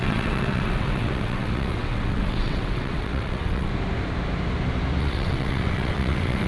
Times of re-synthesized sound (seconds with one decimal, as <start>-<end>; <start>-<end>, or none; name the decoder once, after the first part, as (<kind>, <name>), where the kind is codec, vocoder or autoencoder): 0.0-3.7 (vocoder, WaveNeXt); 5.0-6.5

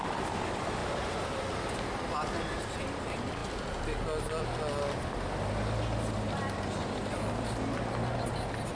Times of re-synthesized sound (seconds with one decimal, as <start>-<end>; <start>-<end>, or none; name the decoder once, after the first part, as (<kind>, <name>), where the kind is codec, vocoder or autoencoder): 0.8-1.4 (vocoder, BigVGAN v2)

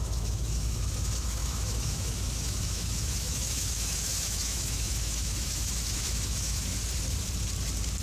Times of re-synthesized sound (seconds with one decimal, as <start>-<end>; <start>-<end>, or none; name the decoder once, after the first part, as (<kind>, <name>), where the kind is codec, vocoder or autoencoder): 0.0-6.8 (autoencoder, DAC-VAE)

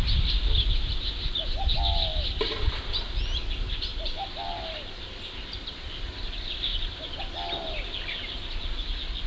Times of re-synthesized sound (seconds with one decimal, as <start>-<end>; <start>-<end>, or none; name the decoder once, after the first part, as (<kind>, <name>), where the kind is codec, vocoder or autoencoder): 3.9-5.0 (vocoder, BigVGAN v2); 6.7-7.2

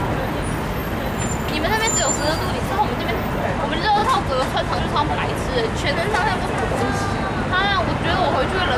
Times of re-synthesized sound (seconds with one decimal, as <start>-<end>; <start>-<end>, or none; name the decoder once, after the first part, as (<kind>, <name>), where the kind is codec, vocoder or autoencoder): none

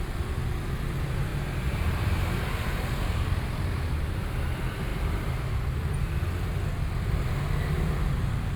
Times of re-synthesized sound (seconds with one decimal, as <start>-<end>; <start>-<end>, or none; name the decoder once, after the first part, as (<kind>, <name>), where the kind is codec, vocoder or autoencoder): 1.3-4.0 (vocoder, BigVGAN v2)